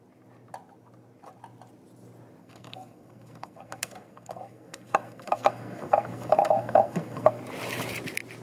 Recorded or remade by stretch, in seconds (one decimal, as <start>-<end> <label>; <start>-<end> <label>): 0.0-2.4 recorded; 2.4-7.4 remade; 7.4-8.4 recorded